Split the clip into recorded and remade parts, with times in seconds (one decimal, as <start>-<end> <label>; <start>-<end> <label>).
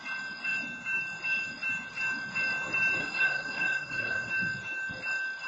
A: 0.0-3.0 recorded; 3.0-4.3 remade; 4.3-5.5 recorded